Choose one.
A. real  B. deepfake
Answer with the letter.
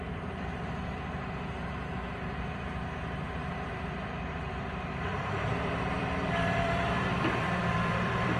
B